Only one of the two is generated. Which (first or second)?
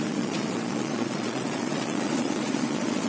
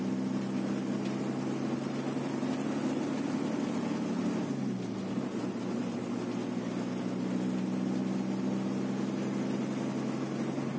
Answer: first